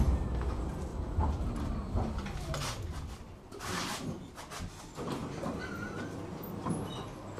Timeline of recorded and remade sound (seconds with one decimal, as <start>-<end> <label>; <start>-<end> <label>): 0.0-0.9 recorded; 0.9-4.3 remade; 4.3-5.2 recorded; 5.2-6.5 remade; 6.5-7.4 recorded